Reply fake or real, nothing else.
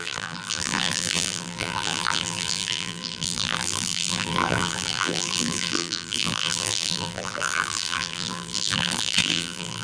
fake